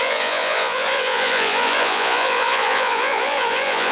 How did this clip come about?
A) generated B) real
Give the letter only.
A